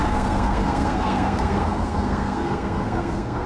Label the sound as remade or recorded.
remade